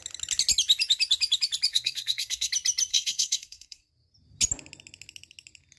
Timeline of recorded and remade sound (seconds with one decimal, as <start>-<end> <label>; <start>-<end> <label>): 0.0-1.7 recorded; 1.7-2.5 remade; 2.5-2.9 recorded; 2.9-3.9 remade; 3.9-5.8 recorded